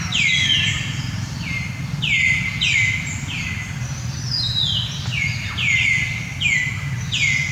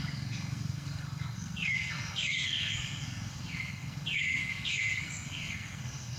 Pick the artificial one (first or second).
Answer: second